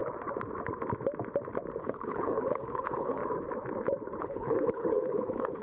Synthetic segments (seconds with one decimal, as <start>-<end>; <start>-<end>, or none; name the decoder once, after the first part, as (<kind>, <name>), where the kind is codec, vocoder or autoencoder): 1.8-3.2 (codec, HILCodec); 4.2-5.6